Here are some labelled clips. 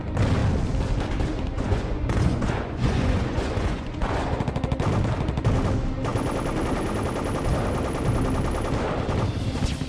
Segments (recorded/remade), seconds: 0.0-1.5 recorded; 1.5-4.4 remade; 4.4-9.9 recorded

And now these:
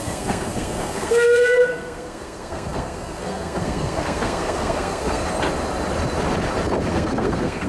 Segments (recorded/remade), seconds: 0.0-5.2 remade; 5.2-6.9 recorded; 6.9-7.7 remade

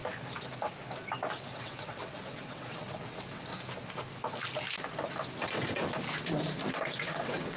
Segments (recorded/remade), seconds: 0.0-1.5 recorded; 1.5-3.5 remade; 3.5-6.7 recorded; 6.7-7.6 remade

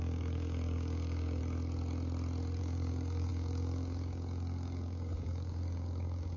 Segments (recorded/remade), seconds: 0.0-1.4 remade; 1.4-2.6 recorded; 2.6-6.4 remade

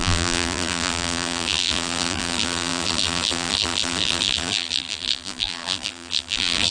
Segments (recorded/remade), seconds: 0.0-6.7 remade

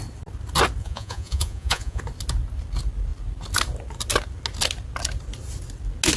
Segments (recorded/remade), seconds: 0.0-0.8 recorded; 0.8-2.0 remade; 2.0-6.2 recorded